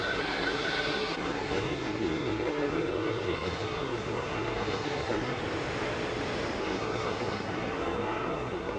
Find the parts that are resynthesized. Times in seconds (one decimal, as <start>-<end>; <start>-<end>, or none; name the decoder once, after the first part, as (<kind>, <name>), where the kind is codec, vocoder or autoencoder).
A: 0.0-5.4 (codec, SNAC); 6.6-8.8